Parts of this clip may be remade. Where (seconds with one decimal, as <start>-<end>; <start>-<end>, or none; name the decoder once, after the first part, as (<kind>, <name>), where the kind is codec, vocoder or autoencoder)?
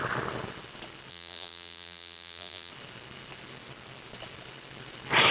1.1-2.7 (vocoder, BigVGAN v2)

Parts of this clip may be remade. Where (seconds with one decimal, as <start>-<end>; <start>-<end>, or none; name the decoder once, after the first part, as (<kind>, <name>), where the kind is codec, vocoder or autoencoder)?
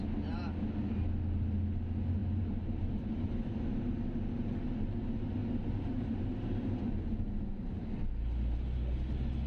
2.2-3.3 (vocoder, BigVGAN v2); 5.4-6.8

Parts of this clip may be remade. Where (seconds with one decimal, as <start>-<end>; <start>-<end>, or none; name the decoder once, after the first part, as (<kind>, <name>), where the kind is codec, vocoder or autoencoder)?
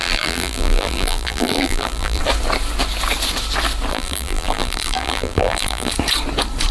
0.0-2.2 (vocoder, BigVGAN v2); 3.9-5.9